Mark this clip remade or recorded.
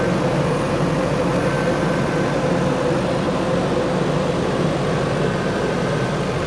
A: recorded